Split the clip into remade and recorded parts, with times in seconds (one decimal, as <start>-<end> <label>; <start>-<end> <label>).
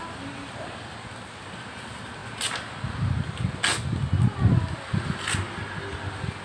0.0-6.4 recorded